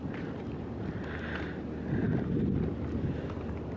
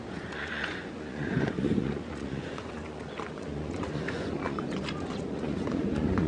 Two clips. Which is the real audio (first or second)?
first